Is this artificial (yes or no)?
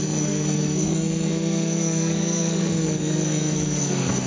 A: yes